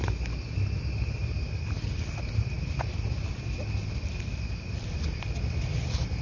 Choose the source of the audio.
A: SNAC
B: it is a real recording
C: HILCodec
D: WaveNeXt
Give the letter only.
B